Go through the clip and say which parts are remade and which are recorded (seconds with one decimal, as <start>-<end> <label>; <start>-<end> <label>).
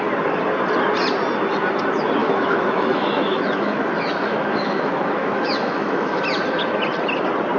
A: 0.0-2.2 recorded; 2.2-6.2 remade; 6.2-7.6 recorded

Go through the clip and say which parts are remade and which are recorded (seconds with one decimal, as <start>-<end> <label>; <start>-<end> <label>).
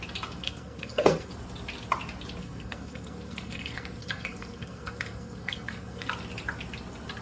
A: 0.0-0.4 recorded; 0.4-1.3 remade; 1.3-2.4 recorded; 2.4-6.1 remade; 6.1-7.2 recorded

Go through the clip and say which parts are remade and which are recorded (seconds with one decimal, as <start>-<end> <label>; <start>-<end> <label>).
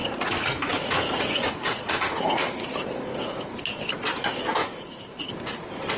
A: 0.0-3.5 remade; 3.5-4.6 recorded; 4.6-5.3 remade; 5.3-6.0 recorded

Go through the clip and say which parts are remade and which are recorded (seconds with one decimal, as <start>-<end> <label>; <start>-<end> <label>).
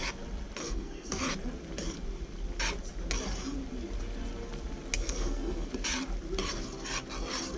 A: 0.0-0.6 recorded; 0.6-1.2 remade; 1.2-5.0 recorded; 5.0-5.7 remade; 5.7-7.6 recorded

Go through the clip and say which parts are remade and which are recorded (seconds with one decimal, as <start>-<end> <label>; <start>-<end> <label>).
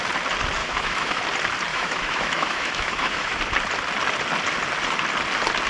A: 0.0-0.6 recorded; 0.6-1.2 remade; 1.2-1.7 recorded; 1.7-3.4 remade; 3.4-5.7 recorded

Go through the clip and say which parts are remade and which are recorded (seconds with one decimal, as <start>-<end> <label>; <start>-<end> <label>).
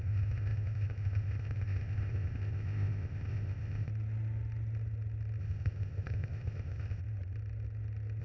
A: 0.0-3.9 remade; 3.9-5.4 recorded; 5.4-7.0 remade; 7.0-8.2 recorded